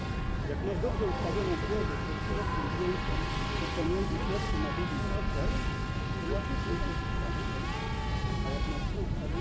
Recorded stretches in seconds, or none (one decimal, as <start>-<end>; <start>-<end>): 0.0-9.4